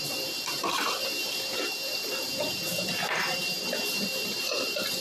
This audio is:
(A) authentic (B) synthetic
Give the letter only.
B